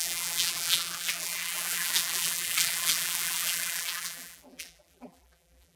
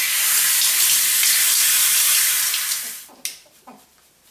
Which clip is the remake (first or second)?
first